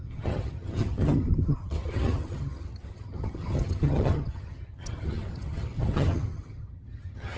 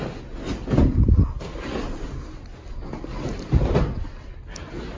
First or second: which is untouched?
second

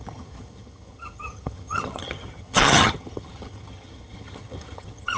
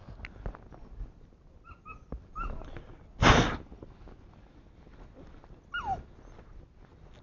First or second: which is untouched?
second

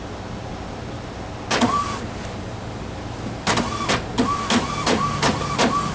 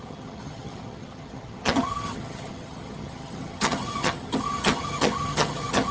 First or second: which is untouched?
first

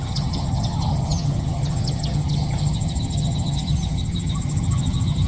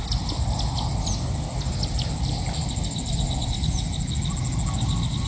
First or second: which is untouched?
second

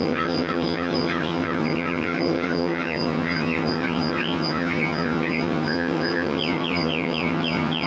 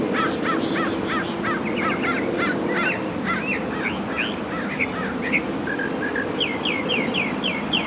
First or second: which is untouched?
second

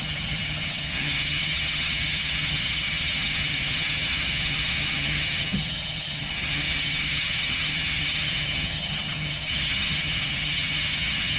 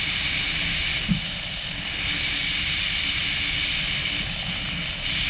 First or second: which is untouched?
second